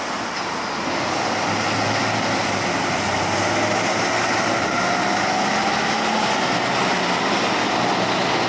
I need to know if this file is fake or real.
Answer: real